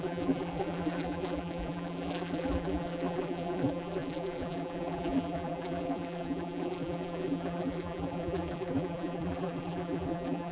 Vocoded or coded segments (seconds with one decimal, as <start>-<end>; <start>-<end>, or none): 0.0-10.5